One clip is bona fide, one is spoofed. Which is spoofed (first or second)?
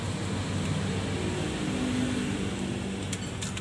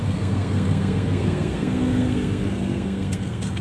second